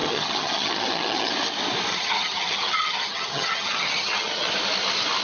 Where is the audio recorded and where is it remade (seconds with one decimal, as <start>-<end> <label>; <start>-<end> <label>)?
0.0-1.3 remade; 1.3-1.9 recorded; 1.9-4.5 remade; 4.5-5.2 recorded